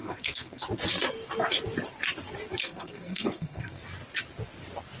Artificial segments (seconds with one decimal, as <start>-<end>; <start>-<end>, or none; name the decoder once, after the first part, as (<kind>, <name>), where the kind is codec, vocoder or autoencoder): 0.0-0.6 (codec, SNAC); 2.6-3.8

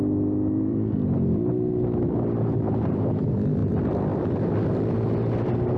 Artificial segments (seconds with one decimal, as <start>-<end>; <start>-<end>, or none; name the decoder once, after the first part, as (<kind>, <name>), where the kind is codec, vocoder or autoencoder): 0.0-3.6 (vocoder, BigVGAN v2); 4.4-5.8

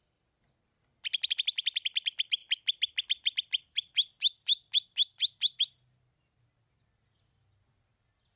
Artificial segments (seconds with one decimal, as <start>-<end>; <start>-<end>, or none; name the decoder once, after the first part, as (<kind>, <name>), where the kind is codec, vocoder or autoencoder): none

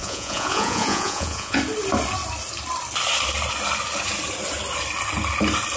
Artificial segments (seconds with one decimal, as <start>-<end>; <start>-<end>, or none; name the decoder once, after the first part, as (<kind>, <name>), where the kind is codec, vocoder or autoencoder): 0.0-1.6 (vocoder, Vocos)